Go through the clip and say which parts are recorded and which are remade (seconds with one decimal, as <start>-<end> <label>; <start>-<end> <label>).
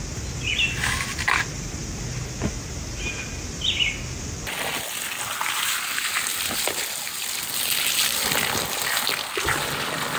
0.0-10.2 recorded